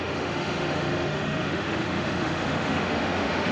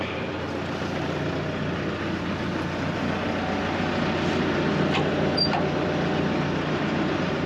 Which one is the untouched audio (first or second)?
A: second